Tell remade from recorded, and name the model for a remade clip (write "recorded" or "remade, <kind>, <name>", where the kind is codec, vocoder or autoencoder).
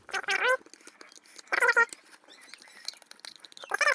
recorded